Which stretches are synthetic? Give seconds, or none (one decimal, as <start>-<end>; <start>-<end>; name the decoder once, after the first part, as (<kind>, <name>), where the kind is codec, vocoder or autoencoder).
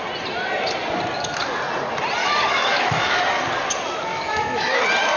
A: 2.2-3.2 (autoencoder, DAC-VAE); 4.1-4.8